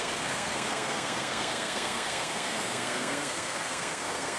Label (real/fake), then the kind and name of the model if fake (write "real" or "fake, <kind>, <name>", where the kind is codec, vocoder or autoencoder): fake, codec, SNAC